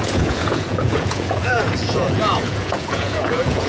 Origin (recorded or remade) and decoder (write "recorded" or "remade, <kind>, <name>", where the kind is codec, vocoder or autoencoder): remade, vocoder, Vocos